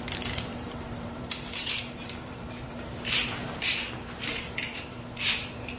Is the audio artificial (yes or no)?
yes